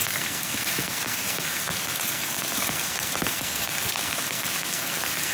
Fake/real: fake